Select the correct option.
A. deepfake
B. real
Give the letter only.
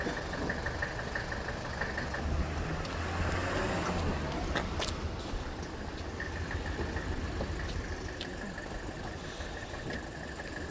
B